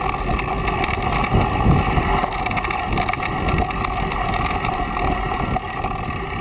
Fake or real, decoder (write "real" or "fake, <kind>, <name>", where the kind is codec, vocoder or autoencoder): real